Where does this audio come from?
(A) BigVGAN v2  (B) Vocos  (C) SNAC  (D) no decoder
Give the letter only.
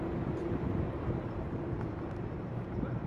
A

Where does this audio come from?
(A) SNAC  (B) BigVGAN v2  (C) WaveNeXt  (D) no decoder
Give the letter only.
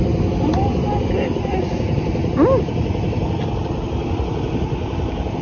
D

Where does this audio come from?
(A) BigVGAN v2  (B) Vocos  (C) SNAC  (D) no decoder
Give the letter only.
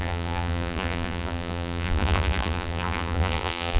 A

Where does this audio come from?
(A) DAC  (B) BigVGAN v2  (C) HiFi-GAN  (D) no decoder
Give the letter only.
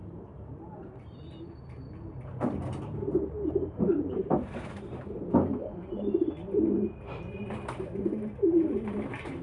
B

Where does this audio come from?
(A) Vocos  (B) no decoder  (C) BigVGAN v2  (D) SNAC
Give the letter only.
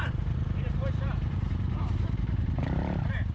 C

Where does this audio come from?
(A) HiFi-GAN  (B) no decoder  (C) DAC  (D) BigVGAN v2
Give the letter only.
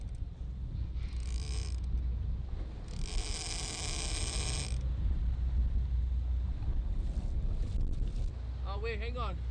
B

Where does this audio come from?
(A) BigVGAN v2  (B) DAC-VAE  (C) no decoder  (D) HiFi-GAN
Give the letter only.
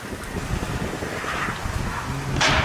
C